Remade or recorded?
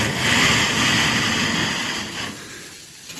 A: recorded